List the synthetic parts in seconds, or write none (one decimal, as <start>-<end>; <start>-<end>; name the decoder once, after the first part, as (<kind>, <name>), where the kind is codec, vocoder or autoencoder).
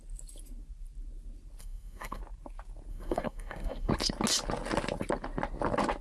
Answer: 1.6-2.2 (codec, SNAC); 2.9-3.9